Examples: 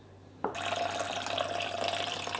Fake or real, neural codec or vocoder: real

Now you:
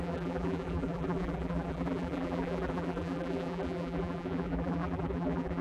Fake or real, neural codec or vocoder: fake, vocoder, BigVGAN v2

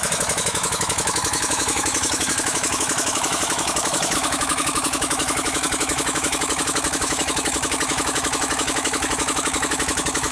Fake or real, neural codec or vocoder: fake, autoencoder, DAC-VAE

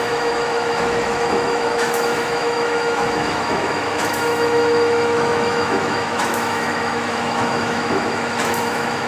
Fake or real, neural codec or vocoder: fake, autoencoder, DAC-VAE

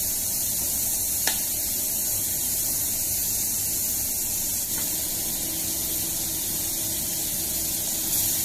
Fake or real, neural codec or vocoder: real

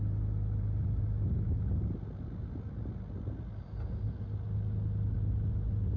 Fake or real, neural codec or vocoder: real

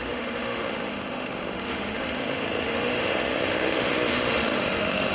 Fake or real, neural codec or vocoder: fake, autoencoder, DAC-VAE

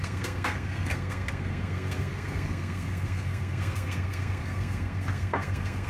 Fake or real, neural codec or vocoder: fake, codec, SNAC